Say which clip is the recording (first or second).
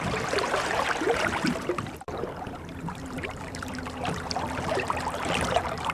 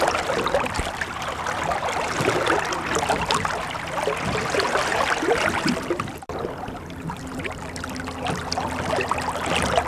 second